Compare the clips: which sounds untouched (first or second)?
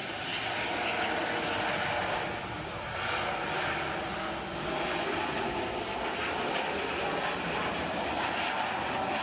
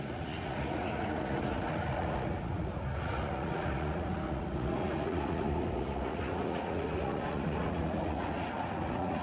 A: first